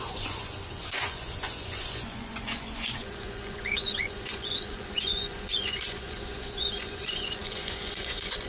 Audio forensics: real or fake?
fake